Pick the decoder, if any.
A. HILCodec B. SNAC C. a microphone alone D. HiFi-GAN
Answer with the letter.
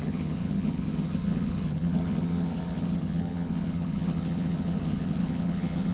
D